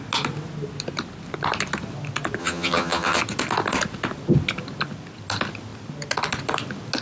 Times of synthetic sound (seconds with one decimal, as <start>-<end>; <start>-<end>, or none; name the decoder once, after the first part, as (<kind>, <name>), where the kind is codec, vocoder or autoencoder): 2.4-3.2 (vocoder, HiFi-GAN)